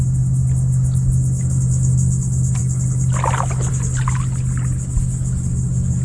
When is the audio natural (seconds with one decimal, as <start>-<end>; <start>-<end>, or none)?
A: 0.0-6.0